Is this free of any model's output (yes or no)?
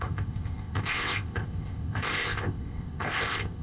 no